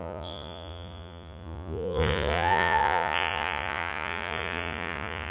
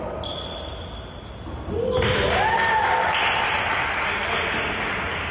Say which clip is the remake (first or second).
first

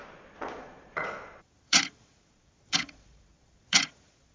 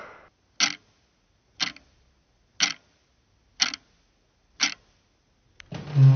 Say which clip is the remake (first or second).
first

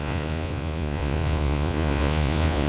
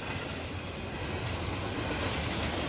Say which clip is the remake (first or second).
first